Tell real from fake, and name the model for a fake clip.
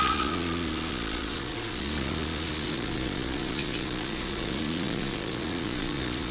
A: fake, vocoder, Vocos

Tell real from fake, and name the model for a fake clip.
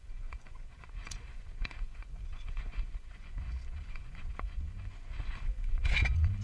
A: fake, vocoder, Vocos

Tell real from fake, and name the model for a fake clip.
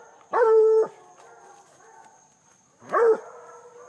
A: real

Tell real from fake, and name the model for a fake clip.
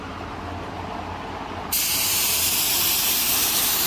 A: real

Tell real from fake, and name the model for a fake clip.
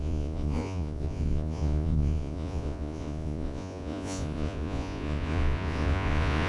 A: fake, vocoder, Vocos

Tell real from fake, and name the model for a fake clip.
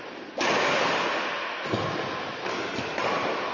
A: real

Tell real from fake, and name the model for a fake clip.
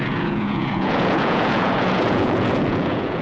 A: fake, vocoder, Vocos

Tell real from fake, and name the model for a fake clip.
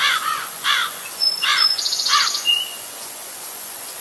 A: fake, vocoder, Vocos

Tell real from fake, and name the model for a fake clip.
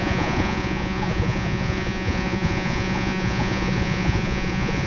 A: fake, vocoder, Vocos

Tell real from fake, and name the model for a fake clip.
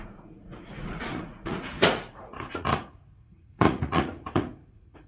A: fake, vocoder, Vocos